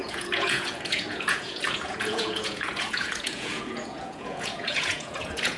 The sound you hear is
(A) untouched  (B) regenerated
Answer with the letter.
B